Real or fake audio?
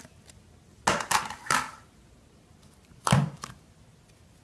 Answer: real